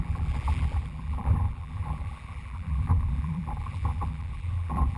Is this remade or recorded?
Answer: remade